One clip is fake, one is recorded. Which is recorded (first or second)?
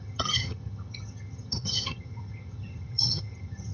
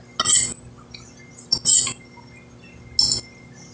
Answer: second